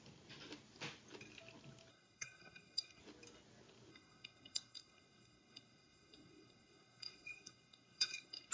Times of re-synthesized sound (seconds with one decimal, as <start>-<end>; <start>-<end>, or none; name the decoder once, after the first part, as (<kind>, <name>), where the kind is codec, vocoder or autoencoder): 1.9-3.0 (codec, SNAC); 3.9-8.5